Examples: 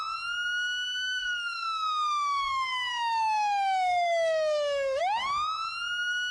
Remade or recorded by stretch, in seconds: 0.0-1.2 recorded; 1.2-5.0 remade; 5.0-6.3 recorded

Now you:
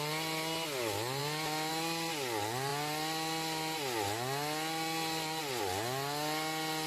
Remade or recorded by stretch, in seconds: 0.0-6.9 recorded

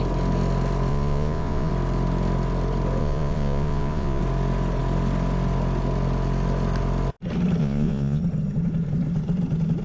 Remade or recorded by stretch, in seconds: 0.0-0.9 recorded; 0.9-1.7 remade; 1.7-3.0 recorded; 3.0-4.2 remade; 4.2-7.6 recorded; 7.6-8.2 remade; 8.2-9.8 recorded

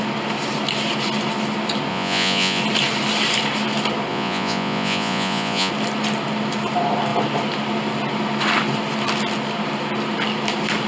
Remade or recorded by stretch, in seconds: 0.0-1.9 recorded; 1.9-2.6 remade; 2.6-4.1 recorded; 4.1-5.7 remade; 5.7-10.9 recorded

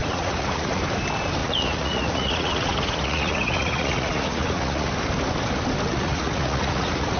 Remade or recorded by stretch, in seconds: 0.0-0.8 remade; 0.8-1.4 recorded; 1.4-4.9 remade; 4.9-5.9 recorded; 5.9-7.2 remade

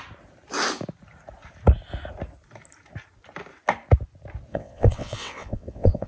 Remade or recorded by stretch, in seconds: 0.0-4.5 recorded; 4.5-6.1 remade